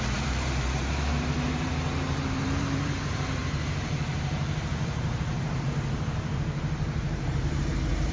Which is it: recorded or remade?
remade